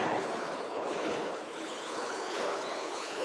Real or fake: fake